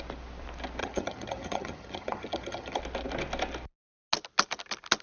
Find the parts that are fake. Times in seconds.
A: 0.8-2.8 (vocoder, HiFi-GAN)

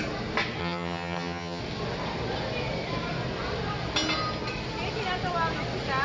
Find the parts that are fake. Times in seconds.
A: 0.6-1.6 (vocoder, HiFi-GAN)

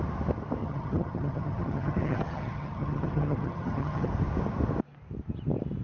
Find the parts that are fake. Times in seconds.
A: 0.6-4.1 (vocoder, HiFi-GAN)